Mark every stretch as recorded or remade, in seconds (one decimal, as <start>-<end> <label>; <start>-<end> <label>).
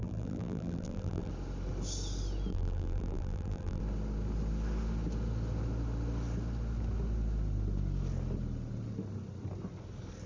0.0-1.3 remade; 1.3-2.5 recorded; 2.5-3.8 remade; 3.8-10.3 recorded